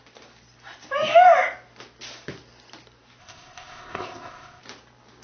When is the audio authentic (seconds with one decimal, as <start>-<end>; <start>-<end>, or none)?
0.0-3.2; 4.6-5.2